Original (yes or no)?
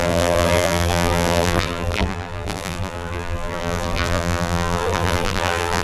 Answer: no